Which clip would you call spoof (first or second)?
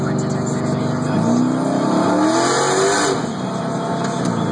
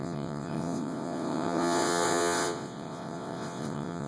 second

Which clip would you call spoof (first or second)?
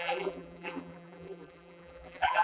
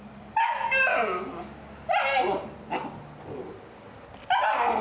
first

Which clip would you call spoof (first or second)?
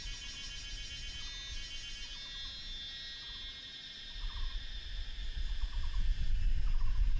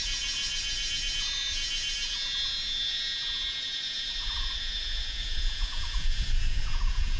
second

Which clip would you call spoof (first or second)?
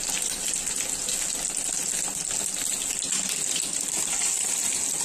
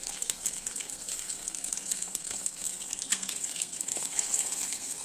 second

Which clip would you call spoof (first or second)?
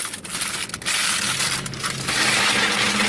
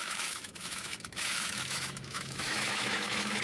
second